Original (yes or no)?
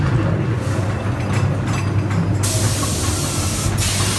yes